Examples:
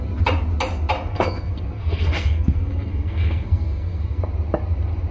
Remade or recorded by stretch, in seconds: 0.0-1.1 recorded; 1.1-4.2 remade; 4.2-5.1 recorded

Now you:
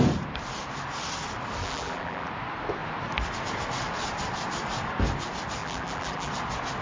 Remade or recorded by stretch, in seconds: 0.0-1.6 recorded; 1.6-2.3 remade; 2.3-5.6 recorded; 5.6-6.3 remade; 6.3-6.8 recorded

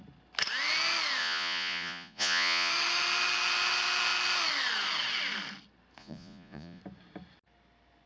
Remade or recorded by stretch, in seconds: 0.0-1.2 recorded; 1.2-2.7 remade; 2.7-6.0 recorded; 6.0-6.8 remade; 6.8-8.1 recorded

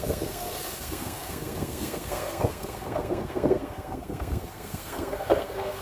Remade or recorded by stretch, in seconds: 0.0-5.8 remade

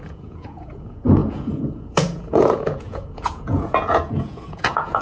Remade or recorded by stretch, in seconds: 0.0-5.0 remade

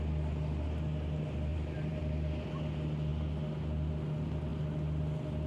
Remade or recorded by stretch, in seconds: 0.0-1.5 recorded; 1.5-2.0 remade; 2.0-5.5 recorded

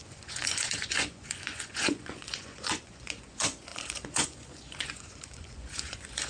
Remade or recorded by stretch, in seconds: 0.0-6.3 remade

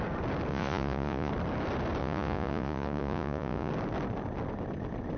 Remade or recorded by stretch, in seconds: 0.0-0.5 recorded; 0.5-1.3 remade; 1.3-2.0 recorded; 2.0-3.7 remade; 3.7-5.2 recorded